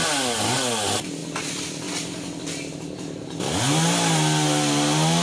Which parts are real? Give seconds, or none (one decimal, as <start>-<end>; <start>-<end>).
0.0-5.2